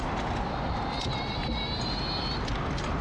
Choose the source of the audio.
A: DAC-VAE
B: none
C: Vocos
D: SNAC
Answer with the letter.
B